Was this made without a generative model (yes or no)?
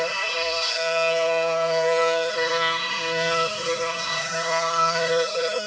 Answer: no